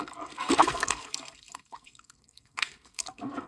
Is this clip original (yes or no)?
no